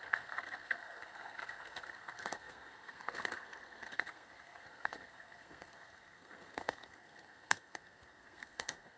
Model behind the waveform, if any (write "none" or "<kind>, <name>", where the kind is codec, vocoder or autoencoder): codec, SNAC